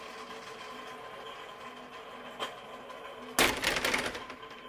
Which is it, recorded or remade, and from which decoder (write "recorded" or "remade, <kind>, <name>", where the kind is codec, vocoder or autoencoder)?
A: recorded